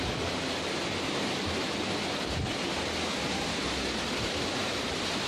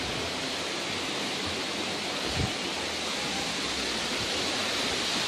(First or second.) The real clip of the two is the second